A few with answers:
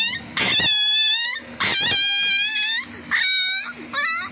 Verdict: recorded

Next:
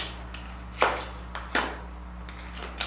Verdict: recorded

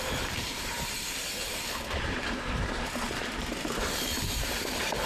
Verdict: remade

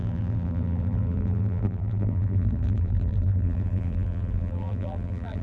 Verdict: remade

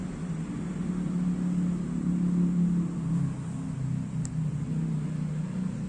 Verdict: recorded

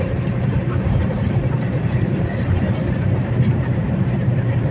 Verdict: remade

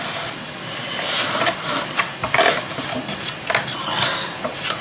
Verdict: remade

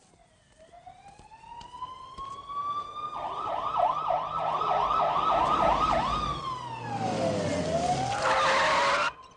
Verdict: recorded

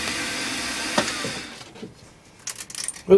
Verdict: recorded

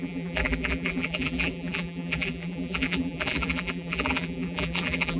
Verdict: remade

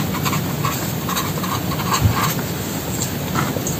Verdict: recorded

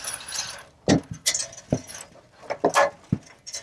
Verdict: recorded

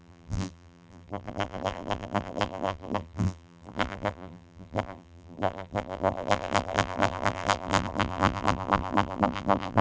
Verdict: remade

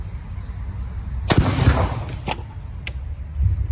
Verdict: recorded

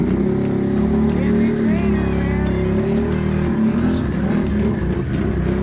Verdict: recorded